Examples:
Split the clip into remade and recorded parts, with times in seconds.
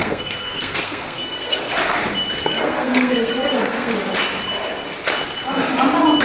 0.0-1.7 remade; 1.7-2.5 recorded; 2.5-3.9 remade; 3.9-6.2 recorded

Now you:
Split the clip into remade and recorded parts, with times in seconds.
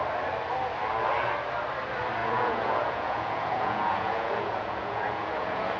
0.0-2.2 recorded; 2.2-5.8 remade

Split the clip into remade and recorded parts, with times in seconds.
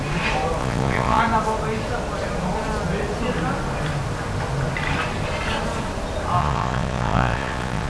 0.0-0.6 recorded; 0.6-1.2 remade; 1.2-6.4 recorded; 6.4-7.9 remade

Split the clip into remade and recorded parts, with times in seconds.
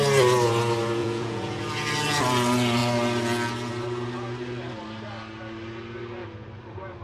0.0-1.0 recorded; 1.0-1.6 remade; 1.6-7.0 recorded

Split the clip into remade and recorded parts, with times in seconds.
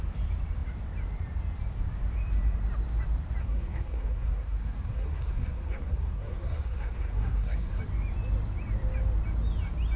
0.0-3.4 recorded; 3.4-7.8 remade; 7.8-10.0 recorded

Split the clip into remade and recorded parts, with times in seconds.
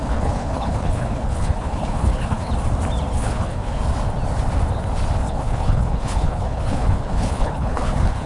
0.0-2.5 remade; 2.5-3.1 recorded; 3.1-3.8 remade; 3.8-5.3 recorded; 5.3-8.3 remade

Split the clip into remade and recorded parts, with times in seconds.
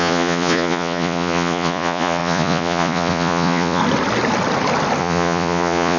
0.0-3.8 remade; 3.8-5.0 recorded; 5.0-6.0 remade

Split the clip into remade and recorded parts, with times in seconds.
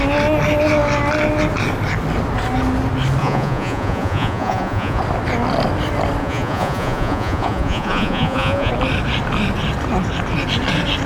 0.0-3.2 recorded; 3.2-5.0 remade; 5.0-6.2 recorded; 6.2-8.7 remade; 8.7-11.1 recorded